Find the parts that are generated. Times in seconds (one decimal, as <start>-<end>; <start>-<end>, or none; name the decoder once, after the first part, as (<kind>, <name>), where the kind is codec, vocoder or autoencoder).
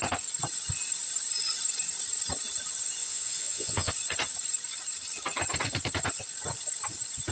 3.0-3.9 (vocoder, Vocos)